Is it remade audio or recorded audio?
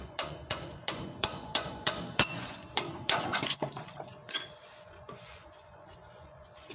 remade